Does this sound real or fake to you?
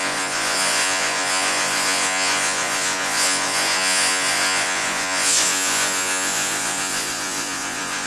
fake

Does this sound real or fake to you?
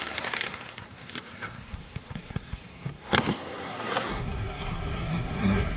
fake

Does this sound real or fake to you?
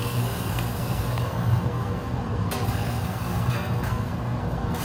fake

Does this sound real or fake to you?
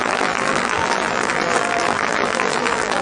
fake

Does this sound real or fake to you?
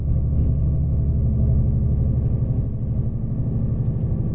real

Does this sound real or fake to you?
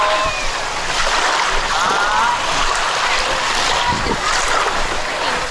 real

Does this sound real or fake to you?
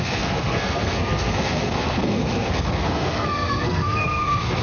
fake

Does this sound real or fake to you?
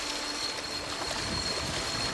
real